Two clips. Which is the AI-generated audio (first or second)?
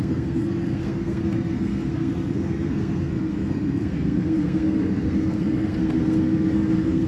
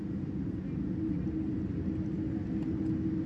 first